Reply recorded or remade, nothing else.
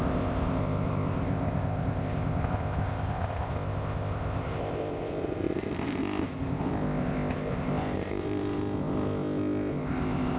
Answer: remade